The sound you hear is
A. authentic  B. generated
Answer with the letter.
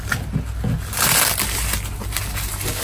A